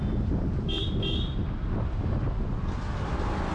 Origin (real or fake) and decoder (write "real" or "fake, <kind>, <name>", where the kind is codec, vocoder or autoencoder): real